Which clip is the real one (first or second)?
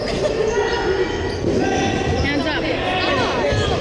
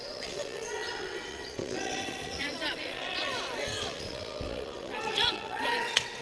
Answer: first